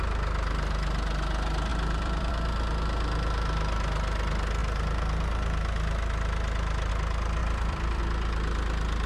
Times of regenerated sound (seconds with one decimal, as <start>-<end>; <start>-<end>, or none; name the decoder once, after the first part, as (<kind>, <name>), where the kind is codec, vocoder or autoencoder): 1.7-2.3 (vocoder, BigVGAN v2); 7.4-8.0